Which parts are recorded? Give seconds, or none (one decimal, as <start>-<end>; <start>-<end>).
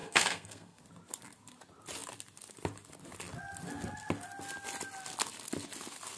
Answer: 0.8-6.2